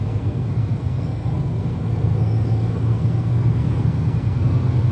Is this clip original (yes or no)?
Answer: no